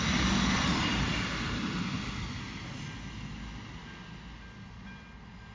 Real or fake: real